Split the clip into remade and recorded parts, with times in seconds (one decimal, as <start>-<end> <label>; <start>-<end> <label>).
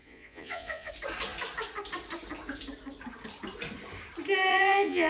0.0-0.9 remade; 0.9-4.5 recorded; 4.5-5.1 remade